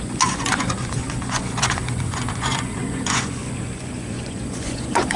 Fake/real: fake